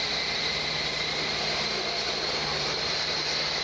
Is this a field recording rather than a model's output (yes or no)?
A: yes